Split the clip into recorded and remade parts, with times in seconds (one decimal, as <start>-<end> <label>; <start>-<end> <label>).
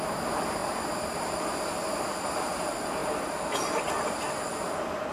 0.0-5.1 recorded